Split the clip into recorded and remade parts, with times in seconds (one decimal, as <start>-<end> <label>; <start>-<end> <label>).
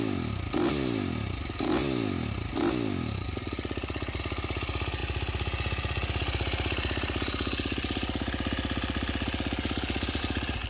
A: 0.0-10.7 recorded